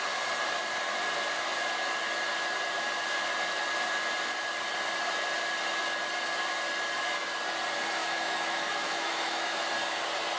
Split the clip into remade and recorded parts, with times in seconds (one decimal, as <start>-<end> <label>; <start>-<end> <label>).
0.0-8.0 recorded; 8.0-9.7 remade; 9.7-10.4 recorded